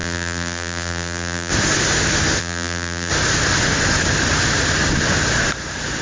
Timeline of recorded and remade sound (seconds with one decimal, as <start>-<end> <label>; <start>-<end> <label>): 0.0-1.5 remade; 1.5-2.4 recorded; 2.4-3.1 remade; 3.1-6.0 recorded